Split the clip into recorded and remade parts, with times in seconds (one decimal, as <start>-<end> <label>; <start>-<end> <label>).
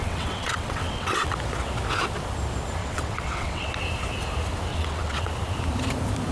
0.0-1.3 remade; 1.3-2.8 recorded; 2.8-3.7 remade; 3.7-4.7 recorded; 4.7-5.3 remade; 5.3-6.3 recorded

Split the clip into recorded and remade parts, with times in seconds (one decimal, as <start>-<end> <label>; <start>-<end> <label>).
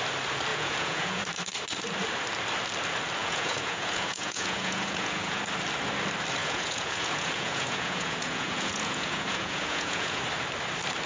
0.0-0.5 recorded; 0.5-1.2 remade; 1.2-3.2 recorded; 3.2-5.4 remade; 5.4-6.4 recorded; 6.4-10.2 remade; 10.2-11.1 recorded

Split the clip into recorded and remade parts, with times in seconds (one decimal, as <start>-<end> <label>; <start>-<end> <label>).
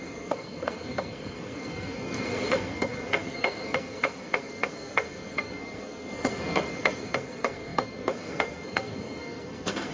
0.0-9.9 remade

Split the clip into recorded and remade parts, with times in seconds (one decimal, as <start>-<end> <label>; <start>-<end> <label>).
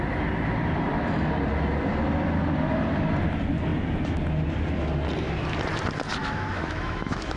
0.0-6.2 recorded; 6.2-7.4 remade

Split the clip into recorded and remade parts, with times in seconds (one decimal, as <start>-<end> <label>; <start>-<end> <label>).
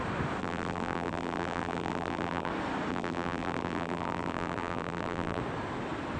0.0-0.4 recorded; 0.4-2.5 remade; 2.5-2.9 recorded; 2.9-5.4 remade; 5.4-6.2 recorded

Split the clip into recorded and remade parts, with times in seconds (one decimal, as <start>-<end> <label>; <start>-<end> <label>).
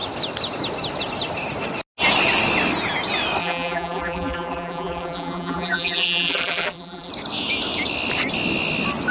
0.0-3.4 recorded; 3.4-7.1 remade; 7.1-9.1 recorded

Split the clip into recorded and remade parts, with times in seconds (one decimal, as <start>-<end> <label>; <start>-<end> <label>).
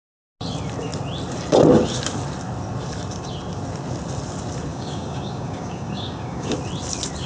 0.0-4.7 recorded; 4.7-6.5 remade; 6.5-7.3 recorded